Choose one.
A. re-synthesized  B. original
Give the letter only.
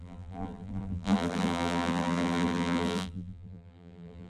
A